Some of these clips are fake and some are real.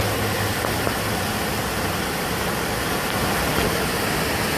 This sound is real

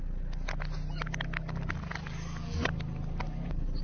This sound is real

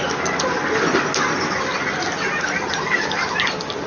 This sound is real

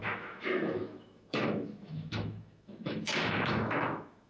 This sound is fake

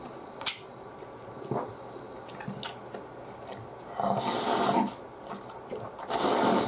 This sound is real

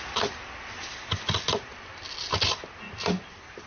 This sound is real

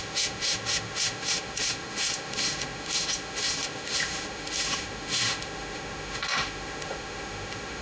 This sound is fake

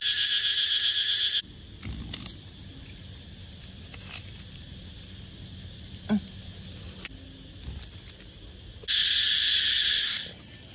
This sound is real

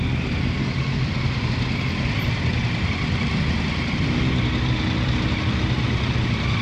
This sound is real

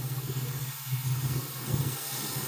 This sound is fake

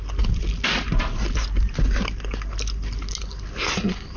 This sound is real